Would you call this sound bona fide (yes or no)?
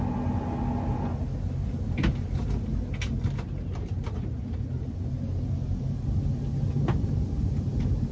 yes